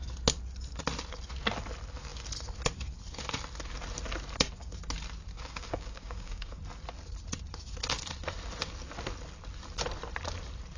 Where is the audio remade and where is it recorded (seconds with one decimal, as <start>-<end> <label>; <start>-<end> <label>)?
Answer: 0.0-5.3 recorded; 5.3-6.6 remade; 6.6-10.8 recorded